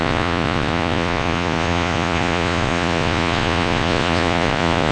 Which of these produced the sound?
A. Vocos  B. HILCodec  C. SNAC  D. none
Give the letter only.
A